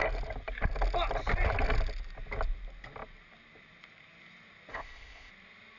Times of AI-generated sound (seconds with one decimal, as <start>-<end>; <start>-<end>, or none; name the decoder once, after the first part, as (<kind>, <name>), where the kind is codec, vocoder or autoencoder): 4.7-5.3 (codec, ZipCodec)